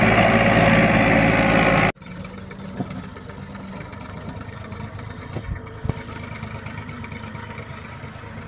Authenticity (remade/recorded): recorded